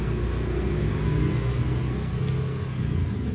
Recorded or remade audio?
remade